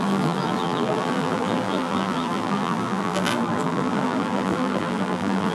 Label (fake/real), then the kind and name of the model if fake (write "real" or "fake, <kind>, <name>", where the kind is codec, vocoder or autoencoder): fake, vocoder, BigVGAN v2